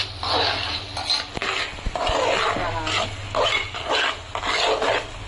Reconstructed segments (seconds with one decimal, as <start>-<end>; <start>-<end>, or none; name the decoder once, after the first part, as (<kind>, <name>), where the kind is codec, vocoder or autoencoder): none